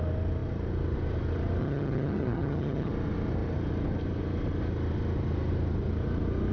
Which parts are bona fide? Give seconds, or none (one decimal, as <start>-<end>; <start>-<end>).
0.0-1.6; 2.9-6.5

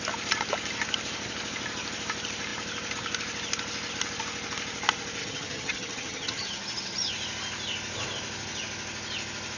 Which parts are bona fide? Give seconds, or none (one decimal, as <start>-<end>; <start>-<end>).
0.0-5.2; 7.1-9.6

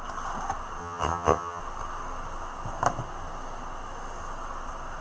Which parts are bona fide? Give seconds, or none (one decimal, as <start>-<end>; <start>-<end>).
0.0-0.8; 1.6-5.0

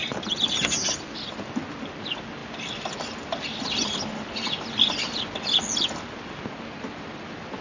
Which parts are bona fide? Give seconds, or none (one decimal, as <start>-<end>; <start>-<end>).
0.0-7.6